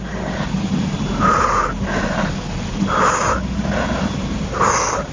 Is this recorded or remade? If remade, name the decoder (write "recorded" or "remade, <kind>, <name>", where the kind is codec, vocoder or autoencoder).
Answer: recorded